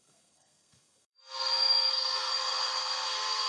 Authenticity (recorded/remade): remade